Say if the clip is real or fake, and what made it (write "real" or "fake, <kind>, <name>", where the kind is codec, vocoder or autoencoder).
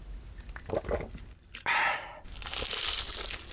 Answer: real